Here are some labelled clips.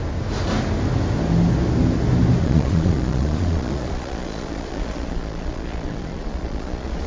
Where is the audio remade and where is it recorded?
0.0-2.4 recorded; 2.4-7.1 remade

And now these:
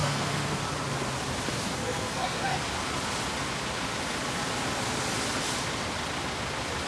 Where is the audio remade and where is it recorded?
0.0-0.6 remade; 0.6-1.8 recorded; 1.8-2.6 remade; 2.6-6.9 recorded

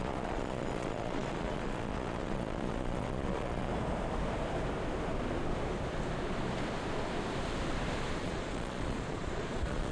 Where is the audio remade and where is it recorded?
0.0-3.7 remade; 3.7-8.2 recorded; 8.2-9.9 remade

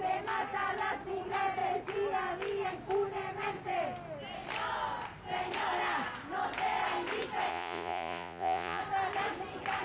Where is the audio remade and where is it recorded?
0.0-7.5 recorded; 7.5-8.8 remade; 8.8-9.8 recorded

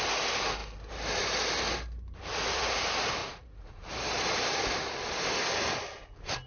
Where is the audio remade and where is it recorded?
0.0-2.3 recorded; 2.3-2.8 remade; 2.8-3.2 recorded; 3.2-3.9 remade; 3.9-6.5 recorded

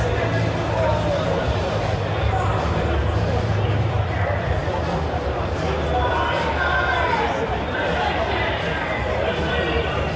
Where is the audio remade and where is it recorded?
0.0-4.6 remade; 4.6-7.7 recorded; 7.7-8.7 remade; 8.7-9.4 recorded; 9.4-10.2 remade

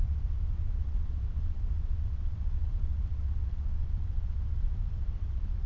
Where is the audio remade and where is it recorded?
0.0-5.7 remade

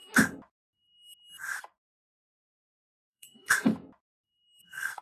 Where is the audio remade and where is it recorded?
0.0-2.1 recorded; 2.1-3.7 remade; 3.7-4.6 recorded; 4.6-5.0 remade